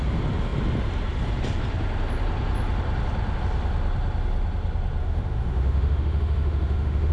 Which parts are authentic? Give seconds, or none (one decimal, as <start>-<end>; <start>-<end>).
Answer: 0.0-5.0